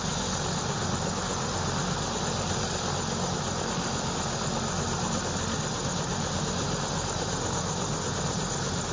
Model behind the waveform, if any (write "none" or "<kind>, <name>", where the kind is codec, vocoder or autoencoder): none